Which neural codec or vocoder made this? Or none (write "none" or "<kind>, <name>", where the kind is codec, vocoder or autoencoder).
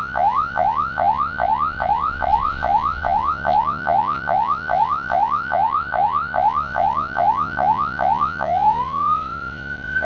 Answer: vocoder, Vocos